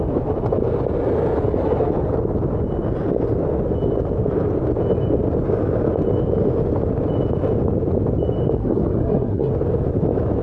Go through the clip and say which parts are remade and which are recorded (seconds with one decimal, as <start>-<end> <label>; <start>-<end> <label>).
0.0-8.6 recorded; 8.6-9.5 remade; 9.5-10.4 recorded